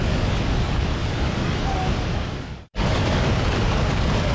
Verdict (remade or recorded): remade